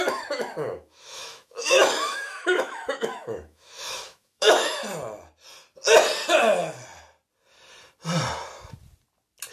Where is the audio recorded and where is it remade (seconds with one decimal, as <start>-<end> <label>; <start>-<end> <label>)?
0.0-4.8 remade; 4.8-9.5 recorded